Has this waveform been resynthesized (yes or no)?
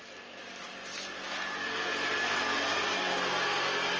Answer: no